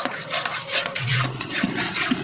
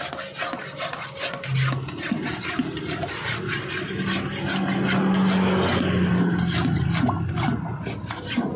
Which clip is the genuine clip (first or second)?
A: second